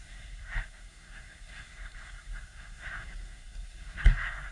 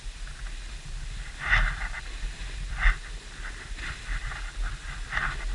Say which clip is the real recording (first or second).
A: second